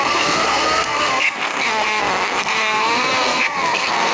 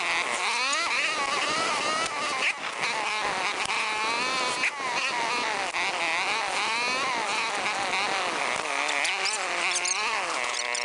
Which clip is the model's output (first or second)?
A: first